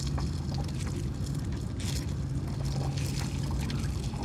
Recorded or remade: recorded